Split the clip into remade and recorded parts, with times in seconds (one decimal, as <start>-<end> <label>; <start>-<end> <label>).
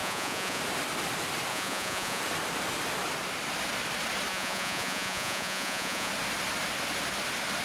0.0-0.6 remade; 0.6-1.5 recorded; 1.5-2.2 remade; 2.2-4.3 recorded; 4.3-6.1 remade; 6.1-7.6 recorded